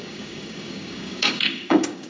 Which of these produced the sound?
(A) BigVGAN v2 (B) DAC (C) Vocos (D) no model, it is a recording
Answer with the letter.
B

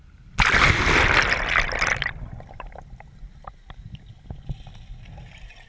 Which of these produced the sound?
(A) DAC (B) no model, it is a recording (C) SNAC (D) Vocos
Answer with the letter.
B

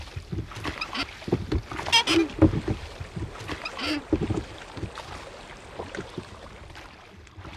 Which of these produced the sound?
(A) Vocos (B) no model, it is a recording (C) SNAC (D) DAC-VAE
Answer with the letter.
B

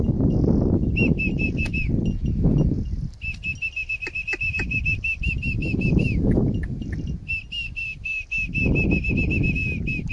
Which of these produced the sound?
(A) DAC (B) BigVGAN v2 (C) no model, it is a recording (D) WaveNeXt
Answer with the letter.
C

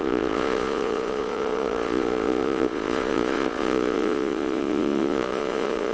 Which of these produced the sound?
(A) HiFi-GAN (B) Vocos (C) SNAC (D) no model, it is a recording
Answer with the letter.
B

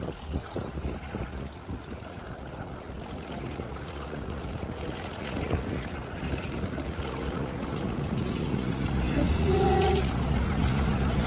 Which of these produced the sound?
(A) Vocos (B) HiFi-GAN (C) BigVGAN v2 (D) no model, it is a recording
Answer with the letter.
A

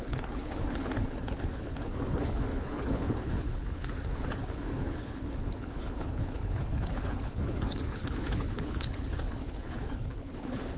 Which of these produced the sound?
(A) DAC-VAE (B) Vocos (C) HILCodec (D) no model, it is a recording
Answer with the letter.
C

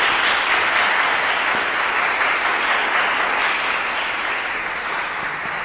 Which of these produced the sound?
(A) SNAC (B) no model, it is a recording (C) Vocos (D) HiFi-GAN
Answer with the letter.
B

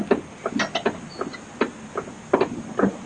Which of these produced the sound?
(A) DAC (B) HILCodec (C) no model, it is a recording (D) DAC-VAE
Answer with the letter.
C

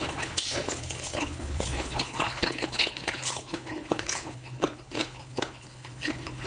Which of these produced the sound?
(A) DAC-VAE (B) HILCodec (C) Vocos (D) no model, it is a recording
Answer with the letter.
B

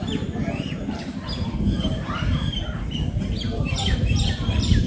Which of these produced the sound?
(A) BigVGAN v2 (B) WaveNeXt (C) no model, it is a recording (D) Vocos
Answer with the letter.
A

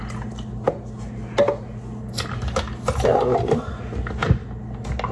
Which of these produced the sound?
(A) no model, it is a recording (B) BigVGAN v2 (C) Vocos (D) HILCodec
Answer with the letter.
A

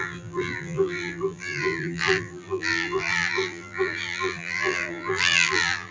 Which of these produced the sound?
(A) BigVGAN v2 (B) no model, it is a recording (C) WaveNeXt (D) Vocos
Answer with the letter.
A